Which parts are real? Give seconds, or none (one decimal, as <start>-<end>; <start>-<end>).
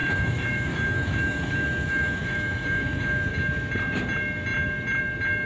3.3-5.5